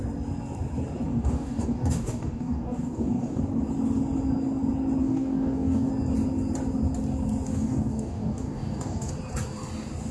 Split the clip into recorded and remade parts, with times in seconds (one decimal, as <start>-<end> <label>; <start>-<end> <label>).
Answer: 0.0-1.1 recorded; 1.1-3.4 remade; 3.4-5.0 recorded; 5.0-5.9 remade; 5.9-7.5 recorded; 7.5-9.1 remade; 9.1-10.1 recorded